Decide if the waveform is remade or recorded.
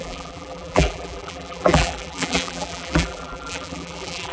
remade